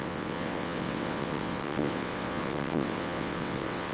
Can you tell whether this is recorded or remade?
remade